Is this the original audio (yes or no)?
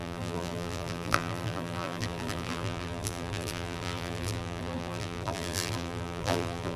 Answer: no